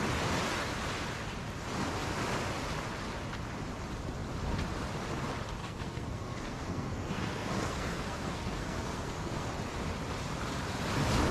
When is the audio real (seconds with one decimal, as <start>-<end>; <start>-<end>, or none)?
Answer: 0.0-5.6; 9.5-11.3